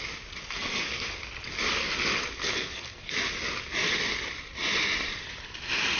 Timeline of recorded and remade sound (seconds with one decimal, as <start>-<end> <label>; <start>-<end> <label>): 0.0-0.4 recorded; 0.4-1.2 remade; 1.2-2.4 recorded; 2.4-3.1 remade; 3.1-6.0 recorded